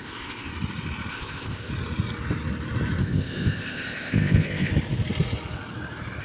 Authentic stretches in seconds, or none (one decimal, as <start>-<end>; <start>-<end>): 0.5-1.1; 1.7-3.0; 4.7-6.2